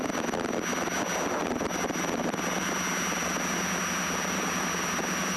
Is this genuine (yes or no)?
yes